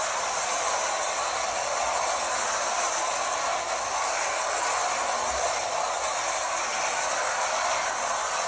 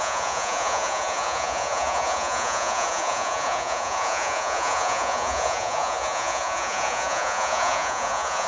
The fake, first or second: second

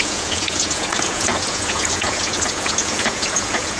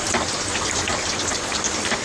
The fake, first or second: first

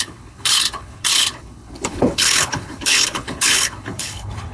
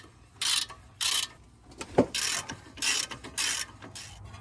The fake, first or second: first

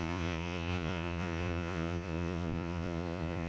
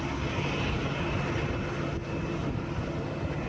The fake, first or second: first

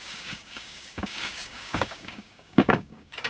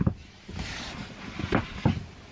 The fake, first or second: first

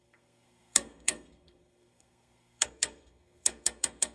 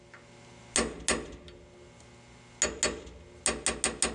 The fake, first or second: first